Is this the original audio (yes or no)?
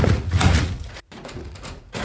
no